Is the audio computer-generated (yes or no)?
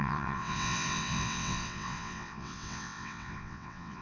yes